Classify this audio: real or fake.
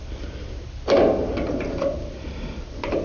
real